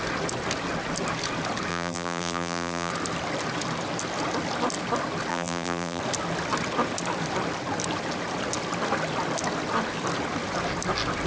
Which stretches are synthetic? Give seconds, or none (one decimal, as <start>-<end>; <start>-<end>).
1.7-2.9; 5.3-6.0